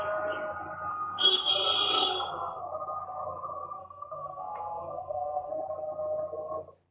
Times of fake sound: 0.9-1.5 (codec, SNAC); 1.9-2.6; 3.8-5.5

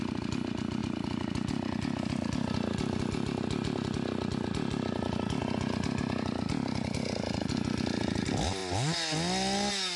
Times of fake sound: none

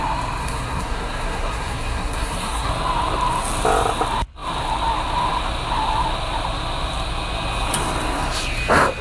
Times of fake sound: 0.4-2.7 (codec, SNAC)

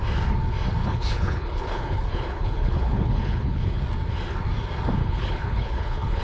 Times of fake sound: 0.8-3.8 (codec, HILCodec); 5.0-6.2

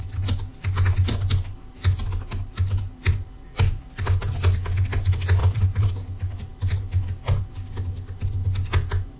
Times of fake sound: 5.4-5.9 (vocoder, BigVGAN v2)